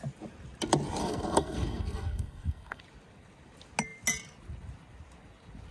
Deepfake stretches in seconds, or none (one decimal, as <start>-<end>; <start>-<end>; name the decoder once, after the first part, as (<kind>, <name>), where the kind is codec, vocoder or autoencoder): 1.0-2.8 (codec, SNAC)